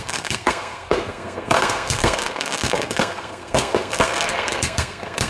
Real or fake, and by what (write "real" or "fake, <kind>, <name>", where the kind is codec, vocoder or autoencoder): fake, codec, SNAC